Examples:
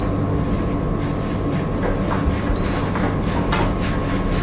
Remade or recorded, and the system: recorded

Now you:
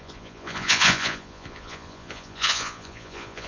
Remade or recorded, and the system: remade, vocoder, Vocos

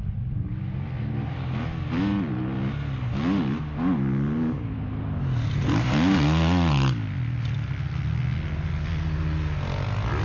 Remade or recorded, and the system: recorded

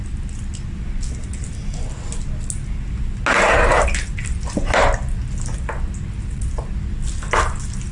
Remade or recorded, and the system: recorded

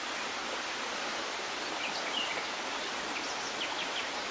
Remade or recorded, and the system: recorded